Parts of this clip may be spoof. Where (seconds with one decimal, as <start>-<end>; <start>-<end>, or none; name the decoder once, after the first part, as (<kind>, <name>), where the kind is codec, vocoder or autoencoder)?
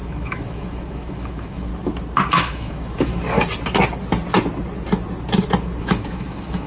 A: 0.0-1.7 (autoencoder, DAC-VAE); 2.3-3.1; 5.8-6.7